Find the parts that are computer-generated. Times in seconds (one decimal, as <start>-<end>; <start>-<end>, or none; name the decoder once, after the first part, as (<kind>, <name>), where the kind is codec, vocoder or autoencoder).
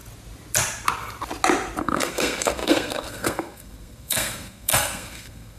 1.8-5.6 (codec, SNAC)